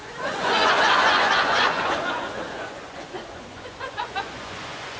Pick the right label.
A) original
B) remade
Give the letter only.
B